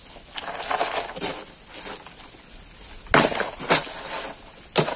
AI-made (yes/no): no